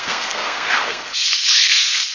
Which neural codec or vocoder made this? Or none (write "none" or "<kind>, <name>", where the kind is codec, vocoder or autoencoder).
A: codec, SNAC